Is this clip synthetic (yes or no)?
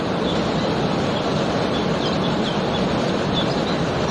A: no